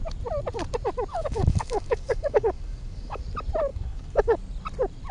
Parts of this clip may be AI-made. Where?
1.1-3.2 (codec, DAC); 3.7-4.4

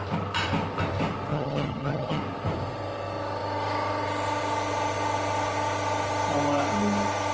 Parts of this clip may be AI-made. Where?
1.3-2.2 (vocoder, HiFi-GAN)